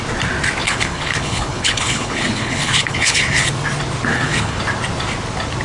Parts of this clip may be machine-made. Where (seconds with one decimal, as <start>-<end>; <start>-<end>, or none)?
0.6-3.2; 4.1-4.6